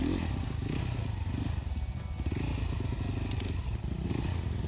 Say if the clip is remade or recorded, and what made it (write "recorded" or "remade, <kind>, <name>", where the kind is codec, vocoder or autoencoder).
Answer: recorded